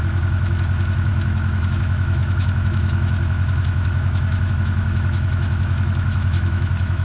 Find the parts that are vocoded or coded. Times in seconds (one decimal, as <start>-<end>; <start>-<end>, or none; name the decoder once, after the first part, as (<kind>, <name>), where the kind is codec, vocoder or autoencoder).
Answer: 0.0-7.0 (autoencoder, DAC-VAE)